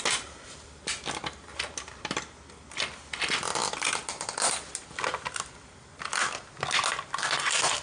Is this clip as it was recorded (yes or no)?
yes